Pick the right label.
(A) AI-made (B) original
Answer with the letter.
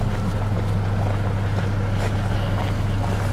B